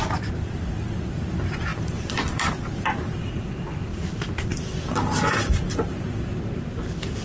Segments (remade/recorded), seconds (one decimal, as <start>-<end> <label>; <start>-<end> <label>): 0.0-7.2 recorded